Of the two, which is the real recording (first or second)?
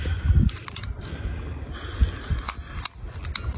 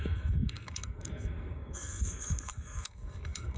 first